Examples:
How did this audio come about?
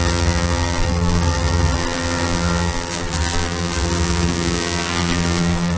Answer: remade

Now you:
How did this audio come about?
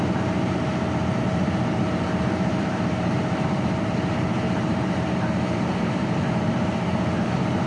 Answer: remade